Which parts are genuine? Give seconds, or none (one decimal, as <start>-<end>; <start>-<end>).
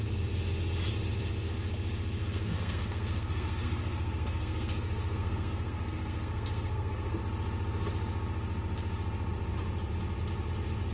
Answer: 0.0-2.2; 7.2-10.9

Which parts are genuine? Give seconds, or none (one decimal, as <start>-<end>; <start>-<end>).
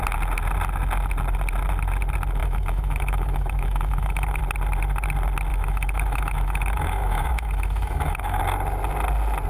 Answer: 0.0-2.4; 4.4-5.5; 8.4-9.5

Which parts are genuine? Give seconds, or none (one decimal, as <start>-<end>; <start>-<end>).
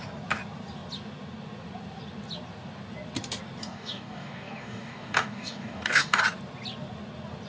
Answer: 0.0-3.6; 6.2-7.5